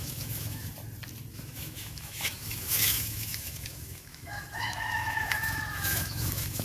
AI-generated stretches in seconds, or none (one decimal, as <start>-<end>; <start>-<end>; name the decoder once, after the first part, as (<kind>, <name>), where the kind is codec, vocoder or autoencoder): 0.0-0.7 (autoencoder, DAC-VAE); 1.3-6.6